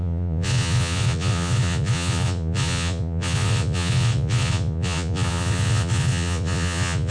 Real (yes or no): no